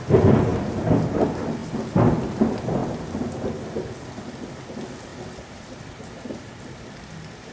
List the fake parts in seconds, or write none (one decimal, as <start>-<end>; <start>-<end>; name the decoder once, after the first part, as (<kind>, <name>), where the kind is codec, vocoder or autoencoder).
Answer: 5.1-6.6 (vocoder, BigVGAN v2)